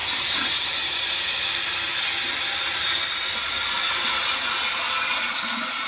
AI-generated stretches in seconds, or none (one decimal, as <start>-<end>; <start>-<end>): none